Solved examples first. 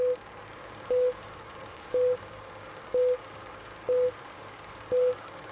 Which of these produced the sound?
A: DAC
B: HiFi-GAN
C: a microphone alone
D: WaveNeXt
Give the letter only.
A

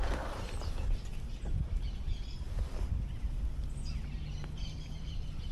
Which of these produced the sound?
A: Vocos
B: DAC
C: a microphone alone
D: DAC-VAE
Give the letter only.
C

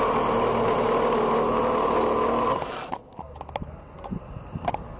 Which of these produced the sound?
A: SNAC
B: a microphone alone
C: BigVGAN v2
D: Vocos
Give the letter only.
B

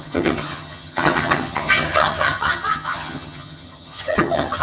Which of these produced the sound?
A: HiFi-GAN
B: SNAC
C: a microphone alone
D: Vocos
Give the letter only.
A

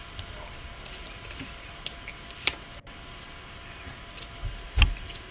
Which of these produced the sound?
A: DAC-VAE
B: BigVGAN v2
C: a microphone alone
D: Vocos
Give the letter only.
C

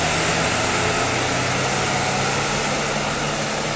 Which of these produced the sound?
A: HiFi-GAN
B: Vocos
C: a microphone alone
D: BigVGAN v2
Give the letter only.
C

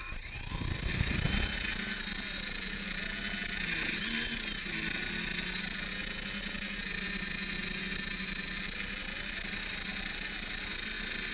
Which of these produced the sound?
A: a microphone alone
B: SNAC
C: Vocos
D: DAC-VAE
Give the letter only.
A